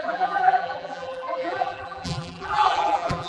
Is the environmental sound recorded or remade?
remade